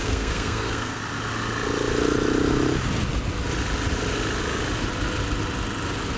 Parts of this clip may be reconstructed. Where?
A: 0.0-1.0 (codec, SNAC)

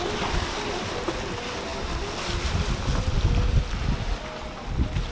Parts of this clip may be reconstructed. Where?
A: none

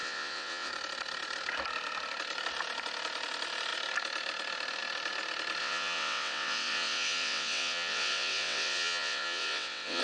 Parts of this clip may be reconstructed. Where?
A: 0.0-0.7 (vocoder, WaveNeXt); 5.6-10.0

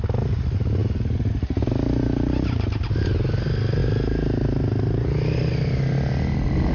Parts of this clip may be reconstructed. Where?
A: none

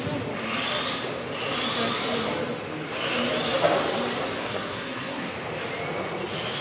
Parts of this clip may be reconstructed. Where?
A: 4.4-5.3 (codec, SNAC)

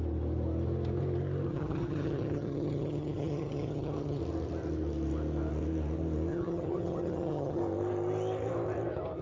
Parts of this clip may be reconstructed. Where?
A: 1.5-4.2 (vocoder, HiFi-GAN); 6.3-7.6